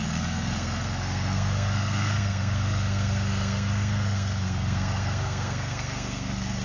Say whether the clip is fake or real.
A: fake